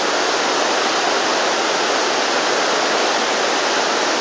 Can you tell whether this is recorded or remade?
recorded